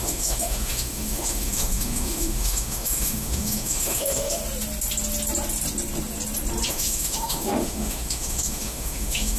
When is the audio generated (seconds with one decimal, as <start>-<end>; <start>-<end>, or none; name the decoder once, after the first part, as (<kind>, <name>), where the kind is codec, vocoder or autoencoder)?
0.0-4.4 (autoencoder, DAC-VAE); 6.7-9.4